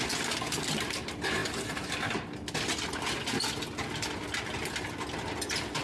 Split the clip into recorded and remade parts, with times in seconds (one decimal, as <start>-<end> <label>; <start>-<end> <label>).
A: 0.0-5.8 recorded